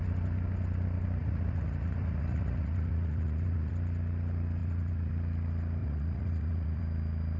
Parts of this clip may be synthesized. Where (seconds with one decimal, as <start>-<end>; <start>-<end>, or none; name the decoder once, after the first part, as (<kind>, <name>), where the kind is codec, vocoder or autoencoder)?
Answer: 1.2-3.7 (vocoder, Vocos); 4.6-5.1; 5.8-6.8